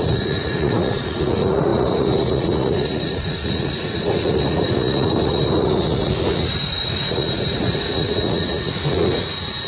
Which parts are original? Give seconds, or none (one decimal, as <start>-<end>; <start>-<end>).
none

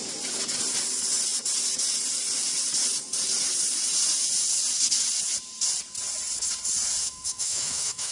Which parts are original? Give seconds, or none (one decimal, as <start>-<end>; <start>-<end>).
0.0-7.0

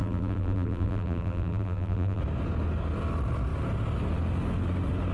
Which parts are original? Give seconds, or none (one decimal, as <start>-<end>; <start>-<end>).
2.2-5.1